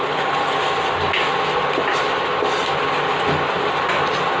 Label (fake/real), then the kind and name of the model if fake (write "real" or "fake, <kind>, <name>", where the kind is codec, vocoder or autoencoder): real